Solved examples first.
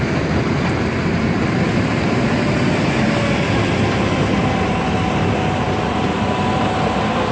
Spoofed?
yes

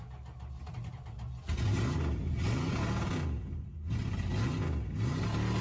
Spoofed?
no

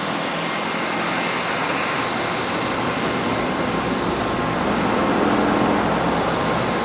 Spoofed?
no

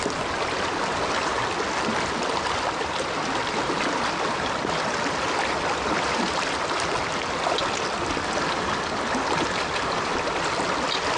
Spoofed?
no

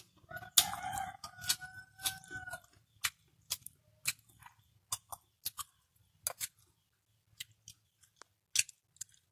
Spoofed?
no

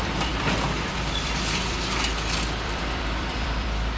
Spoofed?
yes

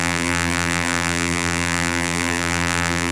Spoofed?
yes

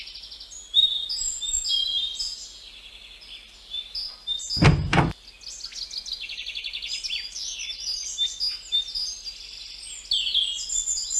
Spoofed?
no